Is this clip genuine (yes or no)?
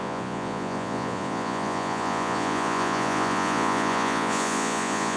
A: no